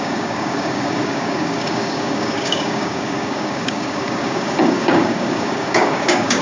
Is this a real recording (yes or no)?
no